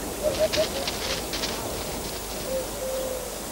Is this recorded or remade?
recorded